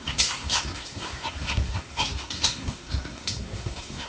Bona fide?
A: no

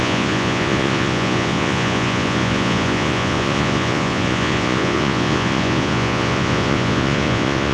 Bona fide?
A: no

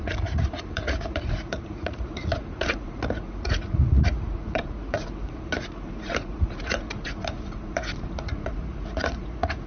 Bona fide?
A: no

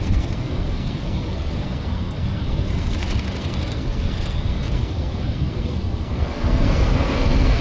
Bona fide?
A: no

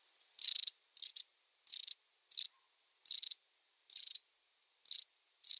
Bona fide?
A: yes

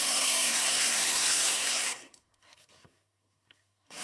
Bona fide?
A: no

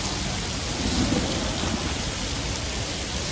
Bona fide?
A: yes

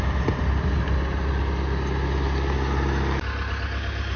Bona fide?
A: yes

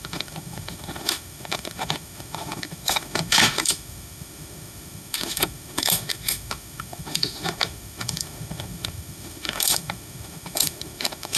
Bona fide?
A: no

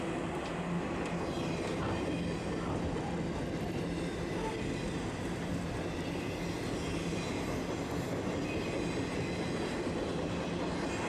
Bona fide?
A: yes